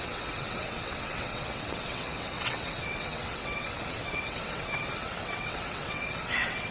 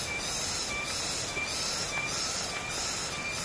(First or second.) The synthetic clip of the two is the first